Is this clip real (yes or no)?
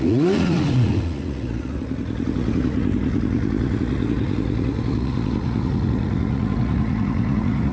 no